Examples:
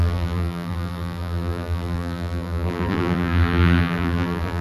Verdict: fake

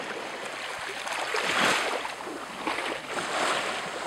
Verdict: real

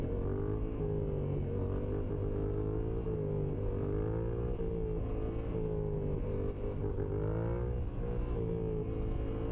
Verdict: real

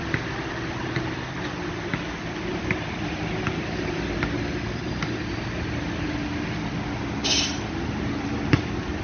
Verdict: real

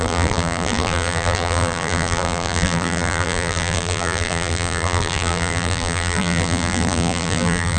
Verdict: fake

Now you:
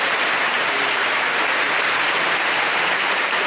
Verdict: fake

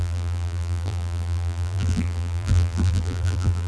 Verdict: fake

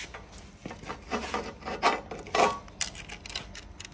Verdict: real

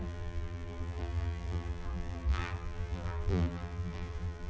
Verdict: fake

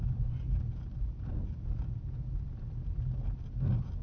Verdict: real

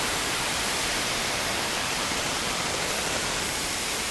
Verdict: fake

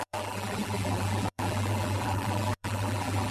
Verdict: fake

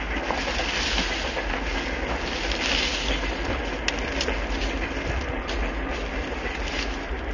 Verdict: real